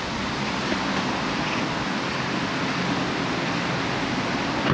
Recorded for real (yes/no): yes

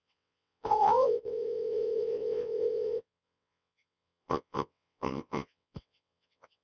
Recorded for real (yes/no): no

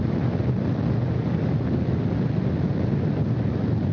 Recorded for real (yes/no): yes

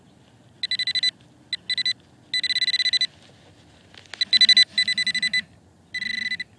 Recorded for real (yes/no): yes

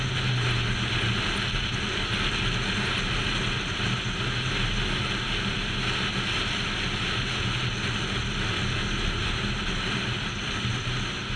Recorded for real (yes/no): yes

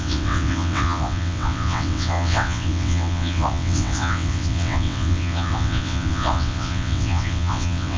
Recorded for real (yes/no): no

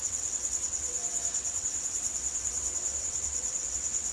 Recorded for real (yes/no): no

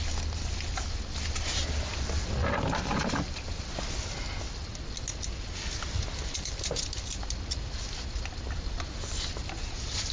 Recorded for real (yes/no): yes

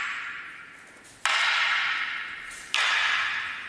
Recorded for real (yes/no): yes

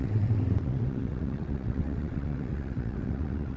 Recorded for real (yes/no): no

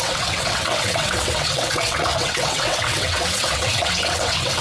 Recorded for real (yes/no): no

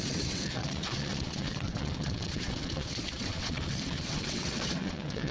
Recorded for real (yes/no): no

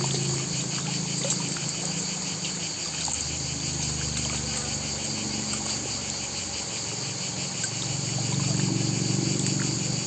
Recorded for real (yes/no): yes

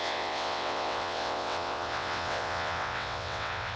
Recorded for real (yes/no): no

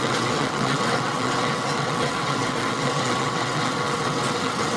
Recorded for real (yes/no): no